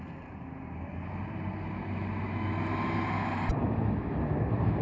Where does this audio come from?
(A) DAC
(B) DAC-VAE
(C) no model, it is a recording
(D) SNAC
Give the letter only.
C